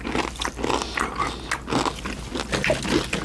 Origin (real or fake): real